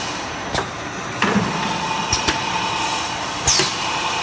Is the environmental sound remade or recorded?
recorded